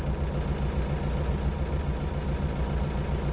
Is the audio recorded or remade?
recorded